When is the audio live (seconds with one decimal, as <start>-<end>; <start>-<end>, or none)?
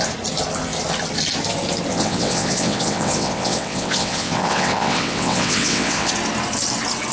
0.0-1.9; 6.1-7.1